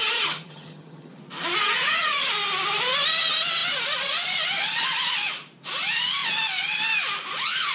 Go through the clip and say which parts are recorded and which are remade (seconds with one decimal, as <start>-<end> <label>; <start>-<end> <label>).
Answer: 0.0-1.1 remade; 1.1-1.6 recorded; 1.6-2.3 remade; 2.3-7.7 recorded